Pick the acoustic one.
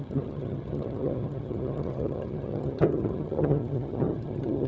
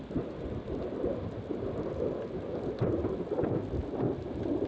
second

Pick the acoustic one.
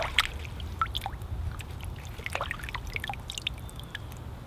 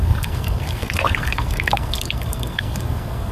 first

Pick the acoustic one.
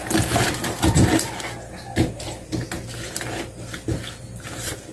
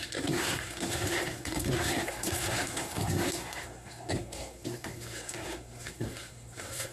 first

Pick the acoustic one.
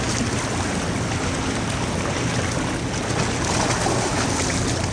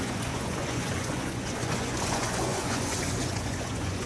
first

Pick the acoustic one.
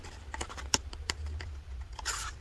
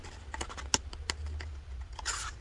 second